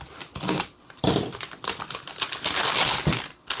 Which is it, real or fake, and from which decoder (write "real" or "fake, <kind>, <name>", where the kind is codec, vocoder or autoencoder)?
real